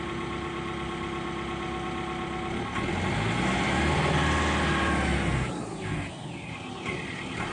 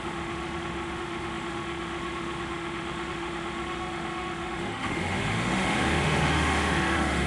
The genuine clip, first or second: first